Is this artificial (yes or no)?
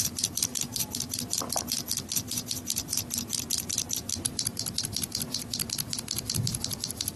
yes